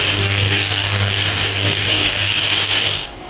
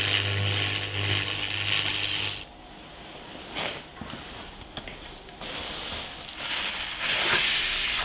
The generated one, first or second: first